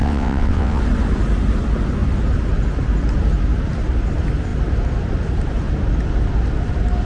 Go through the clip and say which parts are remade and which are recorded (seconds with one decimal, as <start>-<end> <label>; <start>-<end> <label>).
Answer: 0.0-0.8 remade; 0.8-7.0 recorded